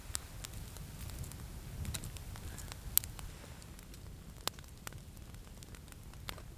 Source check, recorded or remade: recorded